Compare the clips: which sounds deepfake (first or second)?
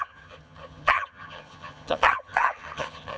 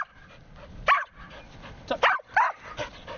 first